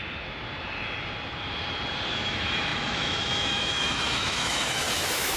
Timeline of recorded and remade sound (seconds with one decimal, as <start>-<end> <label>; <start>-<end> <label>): 0.0-2.1 recorded; 2.1-5.4 remade